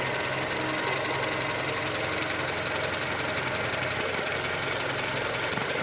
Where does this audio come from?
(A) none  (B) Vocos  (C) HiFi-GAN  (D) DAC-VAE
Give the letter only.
A